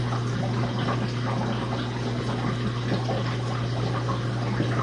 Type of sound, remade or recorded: recorded